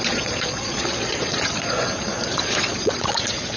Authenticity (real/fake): fake